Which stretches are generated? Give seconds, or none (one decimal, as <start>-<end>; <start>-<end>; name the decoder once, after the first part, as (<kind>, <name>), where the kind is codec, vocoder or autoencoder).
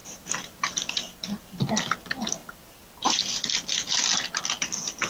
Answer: 0.0-0.7 (vocoder, BigVGAN v2)